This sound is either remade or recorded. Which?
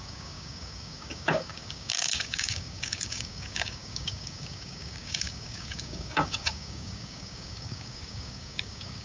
remade